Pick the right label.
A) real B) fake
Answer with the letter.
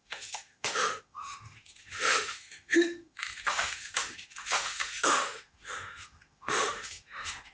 B